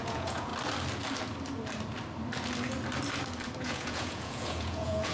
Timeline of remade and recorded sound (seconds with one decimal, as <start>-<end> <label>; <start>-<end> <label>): 0.0-0.5 remade; 0.5-3.6 recorded; 3.6-5.1 remade